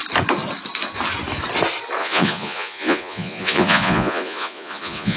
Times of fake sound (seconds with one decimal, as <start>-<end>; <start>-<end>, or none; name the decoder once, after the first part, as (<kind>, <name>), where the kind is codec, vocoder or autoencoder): 2.0-5.2 (vocoder, Vocos)